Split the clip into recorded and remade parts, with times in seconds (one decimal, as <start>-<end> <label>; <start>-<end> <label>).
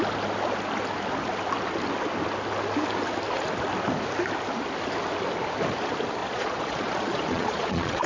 0.0-6.2 recorded; 6.2-8.1 remade